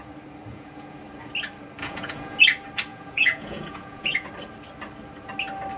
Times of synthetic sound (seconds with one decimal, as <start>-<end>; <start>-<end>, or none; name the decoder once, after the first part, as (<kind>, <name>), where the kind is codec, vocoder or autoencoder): 0.5-1.0 (vocoder, Vocos); 1.8-2.4; 2.9-4.3